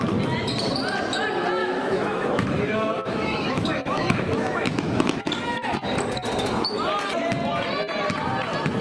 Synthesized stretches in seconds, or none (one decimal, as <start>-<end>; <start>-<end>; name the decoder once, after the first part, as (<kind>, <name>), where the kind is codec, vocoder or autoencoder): 1.6-5.3 (autoencoder, DAC-VAE)